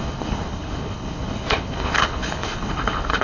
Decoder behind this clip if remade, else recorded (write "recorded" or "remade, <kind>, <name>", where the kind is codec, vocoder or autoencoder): remade, codec, HILCodec